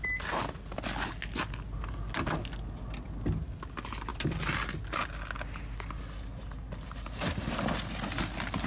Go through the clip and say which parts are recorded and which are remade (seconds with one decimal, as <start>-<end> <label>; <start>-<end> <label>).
0.0-8.7 recorded